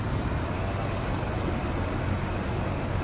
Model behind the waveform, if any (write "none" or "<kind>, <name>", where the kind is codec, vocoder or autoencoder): none